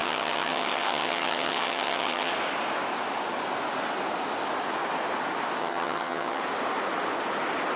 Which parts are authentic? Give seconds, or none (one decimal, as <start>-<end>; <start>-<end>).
2.3-5.6; 6.4-7.8